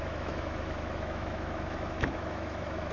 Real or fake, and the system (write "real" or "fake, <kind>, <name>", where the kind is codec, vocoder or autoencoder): fake, autoencoder, DAC-VAE